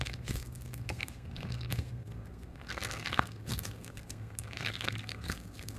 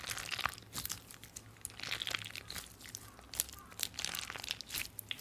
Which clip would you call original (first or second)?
second